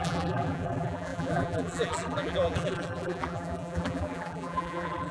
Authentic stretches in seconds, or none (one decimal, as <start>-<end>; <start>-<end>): none